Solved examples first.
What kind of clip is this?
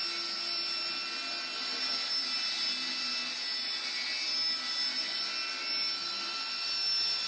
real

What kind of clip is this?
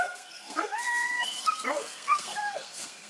fake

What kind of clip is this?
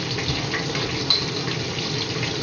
real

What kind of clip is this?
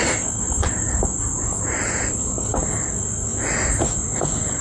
real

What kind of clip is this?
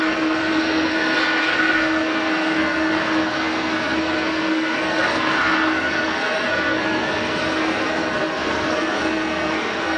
fake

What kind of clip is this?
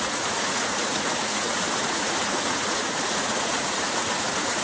fake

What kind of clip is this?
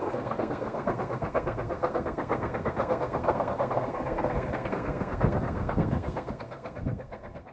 fake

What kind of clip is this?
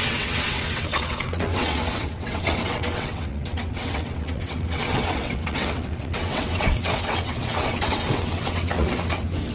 fake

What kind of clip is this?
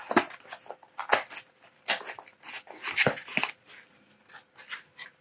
real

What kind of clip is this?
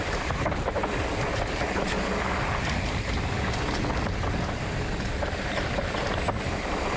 real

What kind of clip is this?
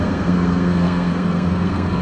fake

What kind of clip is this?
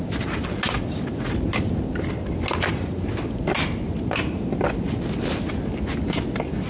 real